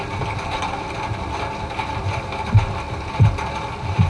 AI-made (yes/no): no